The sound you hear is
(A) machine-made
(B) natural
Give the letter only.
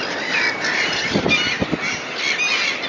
B